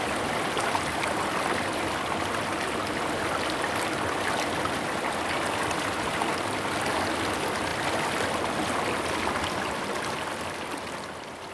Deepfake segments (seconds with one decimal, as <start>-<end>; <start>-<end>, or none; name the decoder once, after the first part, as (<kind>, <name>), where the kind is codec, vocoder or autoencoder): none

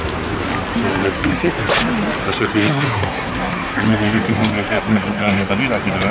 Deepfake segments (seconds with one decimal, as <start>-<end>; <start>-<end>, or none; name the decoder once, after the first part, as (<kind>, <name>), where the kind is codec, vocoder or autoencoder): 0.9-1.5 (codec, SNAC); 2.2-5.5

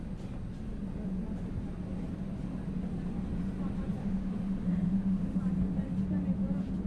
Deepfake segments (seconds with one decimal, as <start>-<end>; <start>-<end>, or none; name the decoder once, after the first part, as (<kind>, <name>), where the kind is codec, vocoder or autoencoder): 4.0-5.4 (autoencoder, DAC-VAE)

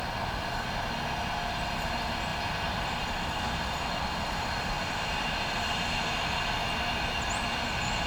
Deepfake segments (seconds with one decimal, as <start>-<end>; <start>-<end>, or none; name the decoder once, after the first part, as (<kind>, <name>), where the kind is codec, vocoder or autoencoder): 2.3-3.1 (vocoder, BigVGAN v2)